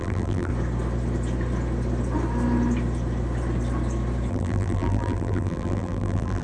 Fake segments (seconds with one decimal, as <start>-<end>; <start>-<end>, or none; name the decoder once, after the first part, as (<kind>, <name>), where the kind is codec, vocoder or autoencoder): 0.0-0.5 (vocoder, BigVGAN v2); 4.3-6.4